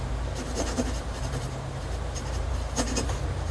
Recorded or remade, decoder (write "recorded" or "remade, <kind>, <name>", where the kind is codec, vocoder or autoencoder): remade, vocoder, BigVGAN v2